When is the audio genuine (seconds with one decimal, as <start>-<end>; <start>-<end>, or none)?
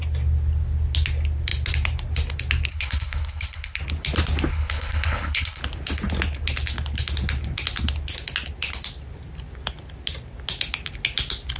0.0-2.7; 3.8-4.5; 5.6-11.6